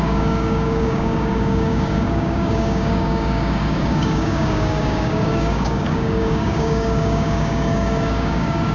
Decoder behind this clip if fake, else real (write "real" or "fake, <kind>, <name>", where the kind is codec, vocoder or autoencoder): fake, codec, DAC